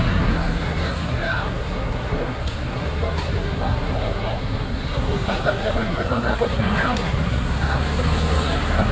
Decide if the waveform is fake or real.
fake